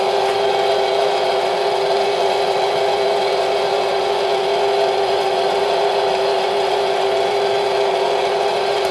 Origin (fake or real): fake